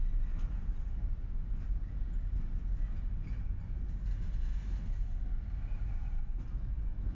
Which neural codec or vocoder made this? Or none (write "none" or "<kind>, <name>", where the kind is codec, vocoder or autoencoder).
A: none